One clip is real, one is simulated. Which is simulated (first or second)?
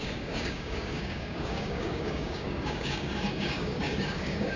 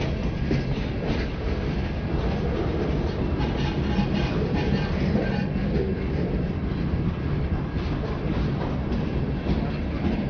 first